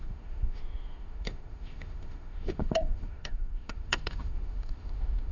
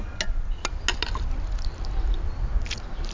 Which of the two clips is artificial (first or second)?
first